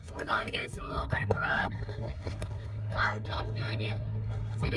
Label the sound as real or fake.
fake